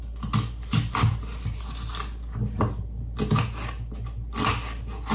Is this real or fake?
real